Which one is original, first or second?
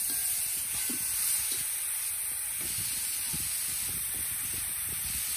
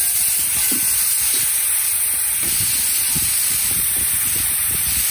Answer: first